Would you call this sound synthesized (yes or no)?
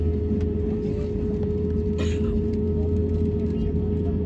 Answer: no